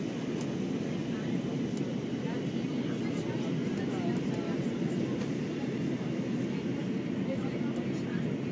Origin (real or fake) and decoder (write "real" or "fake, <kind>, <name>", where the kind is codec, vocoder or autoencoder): real